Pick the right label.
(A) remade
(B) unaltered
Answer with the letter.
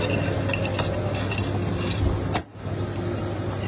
B